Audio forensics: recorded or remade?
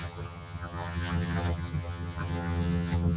remade